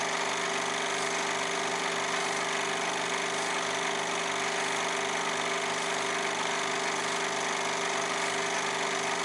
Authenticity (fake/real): real